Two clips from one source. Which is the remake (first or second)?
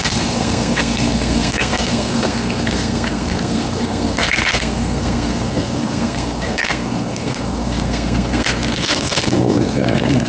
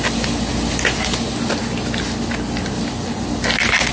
first